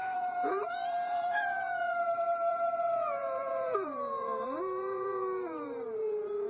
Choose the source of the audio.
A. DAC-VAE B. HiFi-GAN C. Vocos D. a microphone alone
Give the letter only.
C